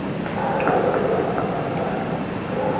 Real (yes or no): yes